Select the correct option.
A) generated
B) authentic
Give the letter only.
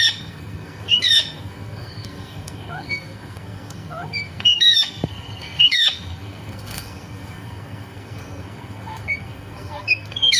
A